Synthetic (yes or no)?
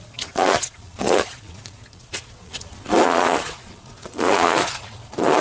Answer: yes